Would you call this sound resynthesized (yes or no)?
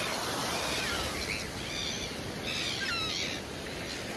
no